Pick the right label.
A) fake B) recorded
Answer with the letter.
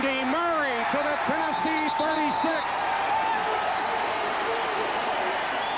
B